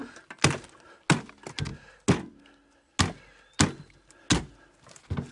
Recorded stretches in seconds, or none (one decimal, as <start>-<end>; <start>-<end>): 0.0-5.3